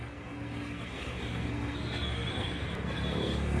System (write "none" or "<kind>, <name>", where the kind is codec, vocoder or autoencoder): codec, SNAC